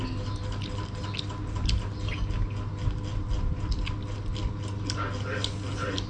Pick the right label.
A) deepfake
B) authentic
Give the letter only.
B